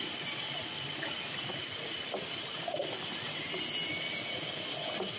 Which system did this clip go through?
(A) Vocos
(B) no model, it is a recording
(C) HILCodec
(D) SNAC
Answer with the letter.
B